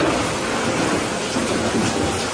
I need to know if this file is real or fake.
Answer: real